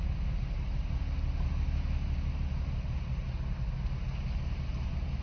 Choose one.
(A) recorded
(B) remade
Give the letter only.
A